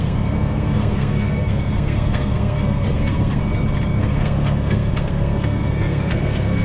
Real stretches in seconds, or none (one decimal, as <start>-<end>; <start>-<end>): 3.4-4.0